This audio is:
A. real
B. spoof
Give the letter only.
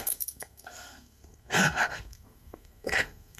B